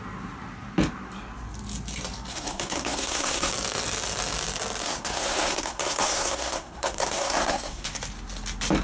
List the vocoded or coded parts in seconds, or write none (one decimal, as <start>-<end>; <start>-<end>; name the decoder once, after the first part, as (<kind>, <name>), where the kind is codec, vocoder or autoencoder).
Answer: 2.3-3.5 (codec, SNAC); 4.8-8.0